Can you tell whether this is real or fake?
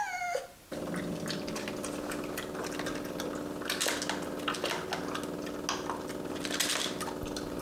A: real